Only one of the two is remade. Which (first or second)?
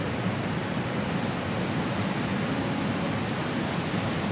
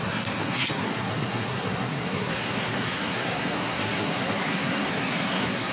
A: second